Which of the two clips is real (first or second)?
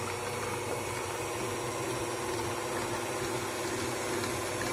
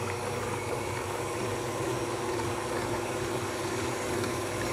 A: first